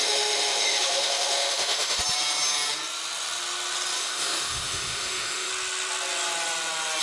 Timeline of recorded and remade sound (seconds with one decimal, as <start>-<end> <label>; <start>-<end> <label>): 0.0-2.0 remade; 2.0-4.0 recorded; 4.0-5.5 remade; 5.5-7.0 recorded